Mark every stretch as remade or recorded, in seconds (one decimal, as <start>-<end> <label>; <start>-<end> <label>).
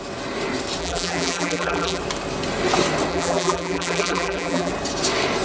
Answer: 0.0-0.8 recorded; 0.8-2.0 remade; 2.0-3.1 recorded; 3.1-4.7 remade; 4.7-5.4 recorded